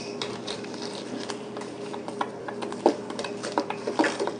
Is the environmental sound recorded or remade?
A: remade